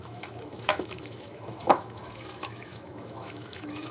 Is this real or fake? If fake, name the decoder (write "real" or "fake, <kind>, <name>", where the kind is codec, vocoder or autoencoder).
fake, autoencoder, DAC-VAE